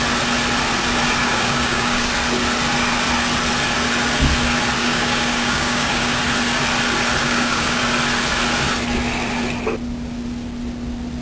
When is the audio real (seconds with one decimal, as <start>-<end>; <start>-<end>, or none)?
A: 0.0-1.2; 2.1-4.8; 6.2-7.2; 7.8-11.2